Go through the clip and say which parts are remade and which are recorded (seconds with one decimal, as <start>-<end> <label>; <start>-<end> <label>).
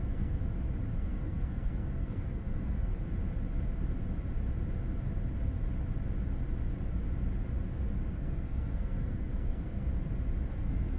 0.0-0.4 remade; 0.4-1.0 recorded; 1.0-2.9 remade; 2.9-8.1 recorded; 8.1-9.9 remade; 9.9-10.5 recorded; 10.5-11.0 remade